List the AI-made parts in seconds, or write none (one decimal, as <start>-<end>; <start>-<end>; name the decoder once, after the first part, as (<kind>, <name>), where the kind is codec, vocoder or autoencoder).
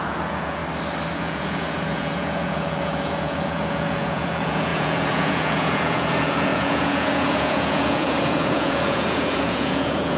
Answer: 0.0-0.6 (vocoder, Vocos); 1.1-10.2